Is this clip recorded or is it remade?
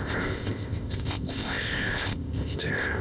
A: remade